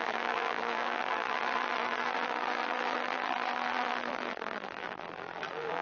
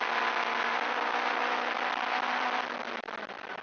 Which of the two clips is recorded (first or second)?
second